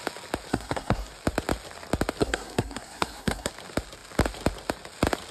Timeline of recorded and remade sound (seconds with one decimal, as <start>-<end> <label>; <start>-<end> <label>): 0.0-0.5 recorded; 0.5-1.1 remade; 1.1-2.2 recorded; 2.2-3.5 remade; 3.5-5.3 recorded